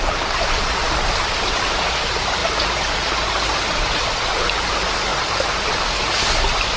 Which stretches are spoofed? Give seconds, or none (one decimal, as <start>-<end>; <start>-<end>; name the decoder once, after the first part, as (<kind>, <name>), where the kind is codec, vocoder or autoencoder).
none

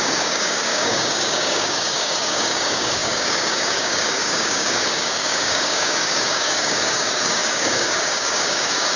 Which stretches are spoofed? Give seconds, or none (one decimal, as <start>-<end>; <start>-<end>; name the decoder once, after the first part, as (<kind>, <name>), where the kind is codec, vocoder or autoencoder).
0.0-9.0 (codec, DAC)

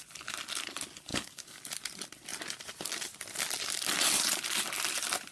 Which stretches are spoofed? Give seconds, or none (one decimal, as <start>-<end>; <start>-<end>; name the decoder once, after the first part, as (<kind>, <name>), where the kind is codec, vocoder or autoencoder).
1.1-1.6 (codec, DAC)

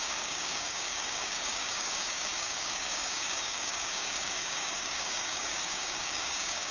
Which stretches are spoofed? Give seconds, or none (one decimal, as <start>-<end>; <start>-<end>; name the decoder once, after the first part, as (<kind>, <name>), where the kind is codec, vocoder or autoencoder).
0.0-6.7 (codec, DAC)

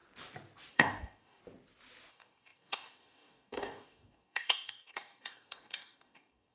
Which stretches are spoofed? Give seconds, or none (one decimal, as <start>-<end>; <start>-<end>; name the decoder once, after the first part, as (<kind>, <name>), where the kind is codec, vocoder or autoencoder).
0.7-1.4 (codec, DAC); 2.1-6.5

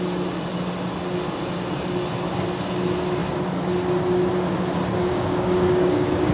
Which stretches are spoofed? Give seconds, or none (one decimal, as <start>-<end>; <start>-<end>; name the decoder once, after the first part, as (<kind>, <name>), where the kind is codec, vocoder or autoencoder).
5.0-6.3 (codec, DAC)

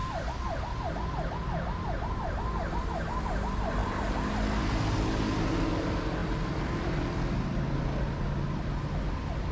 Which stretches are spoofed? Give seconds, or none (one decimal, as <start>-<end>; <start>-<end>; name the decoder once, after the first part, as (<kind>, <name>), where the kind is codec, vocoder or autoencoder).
none